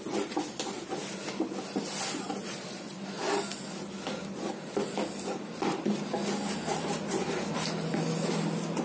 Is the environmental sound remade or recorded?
recorded